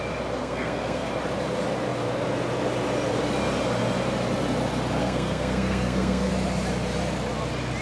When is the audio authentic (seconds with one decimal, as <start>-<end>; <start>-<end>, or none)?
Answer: 0.0-0.4; 1.1-5.0; 6.3-7.8

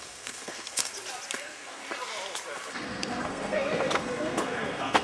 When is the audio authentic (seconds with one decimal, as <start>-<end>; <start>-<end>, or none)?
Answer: 0.9-1.4; 1.8-2.7

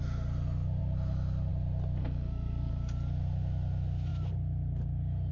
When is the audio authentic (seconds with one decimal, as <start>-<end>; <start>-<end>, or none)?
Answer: 0.0-2.0; 2.7-5.3

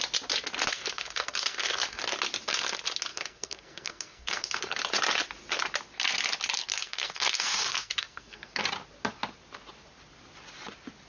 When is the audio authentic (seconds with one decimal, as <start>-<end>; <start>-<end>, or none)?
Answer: 0.0-0.7; 2.0-3.1; 4.8-6.6; 8.6-11.1

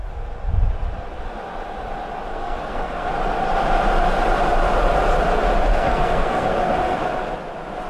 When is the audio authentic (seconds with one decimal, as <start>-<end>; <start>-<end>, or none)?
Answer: 0.0-2.3; 3.1-5.7; 7.0-7.9

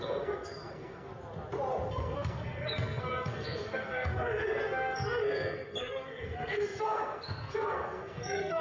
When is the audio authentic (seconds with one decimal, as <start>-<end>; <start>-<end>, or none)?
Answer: 1.1-1.9